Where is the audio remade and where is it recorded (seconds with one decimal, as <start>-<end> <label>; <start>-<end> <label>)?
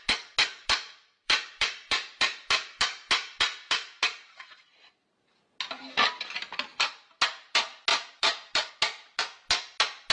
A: 0.0-0.6 recorded; 0.6-5.4 remade; 5.4-7.9 recorded; 7.9-8.7 remade; 8.7-10.1 recorded